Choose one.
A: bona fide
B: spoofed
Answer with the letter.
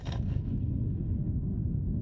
B